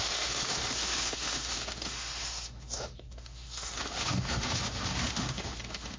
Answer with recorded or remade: remade